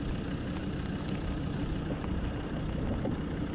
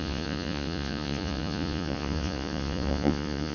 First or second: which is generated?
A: second